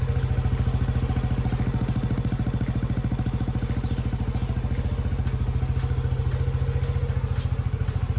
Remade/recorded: recorded